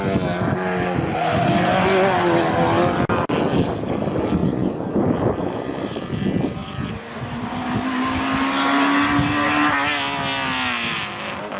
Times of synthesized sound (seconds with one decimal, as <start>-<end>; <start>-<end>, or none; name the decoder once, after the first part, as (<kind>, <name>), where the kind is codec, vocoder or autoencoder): 4.4-4.9 (vocoder, Vocos); 5.4-6.0